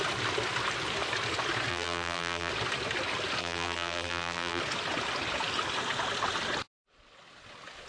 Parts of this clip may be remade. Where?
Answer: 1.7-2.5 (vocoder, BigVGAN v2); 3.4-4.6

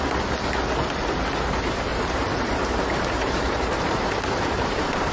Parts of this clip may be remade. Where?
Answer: 1.9-5.1 (vocoder, BigVGAN v2)

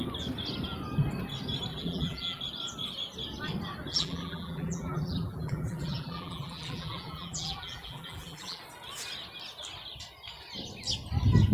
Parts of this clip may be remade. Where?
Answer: 1.7-2.4 (vocoder, BigVGAN v2); 3.9-8.6